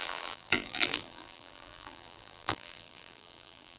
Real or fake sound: fake